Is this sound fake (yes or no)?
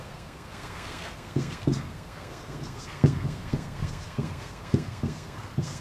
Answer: yes